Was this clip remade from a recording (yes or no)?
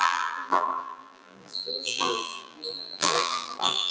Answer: yes